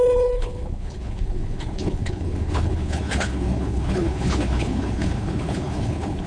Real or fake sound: fake